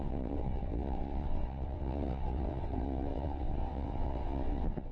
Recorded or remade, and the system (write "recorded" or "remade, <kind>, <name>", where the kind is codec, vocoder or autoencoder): remade, vocoder, WaveNeXt